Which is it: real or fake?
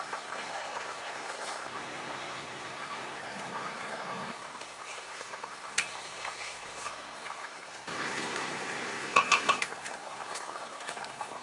fake